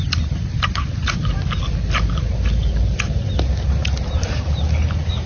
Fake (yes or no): yes